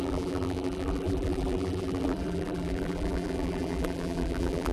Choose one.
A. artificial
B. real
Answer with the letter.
A